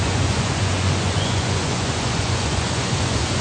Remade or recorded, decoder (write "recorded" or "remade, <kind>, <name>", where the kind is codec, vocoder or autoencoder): remade, vocoder, Vocos